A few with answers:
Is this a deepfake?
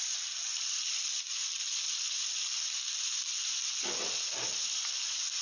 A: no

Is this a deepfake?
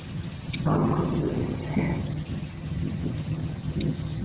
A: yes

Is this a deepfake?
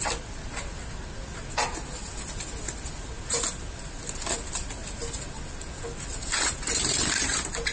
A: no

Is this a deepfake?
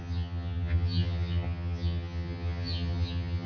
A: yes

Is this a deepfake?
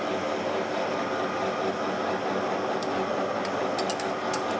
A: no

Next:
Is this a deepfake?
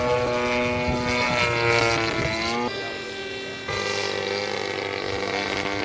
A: no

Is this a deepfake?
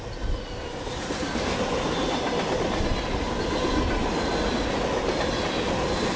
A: no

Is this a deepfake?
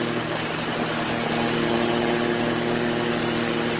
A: no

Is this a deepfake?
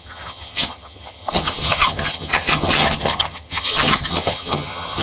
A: yes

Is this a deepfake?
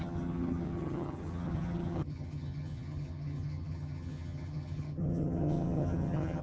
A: yes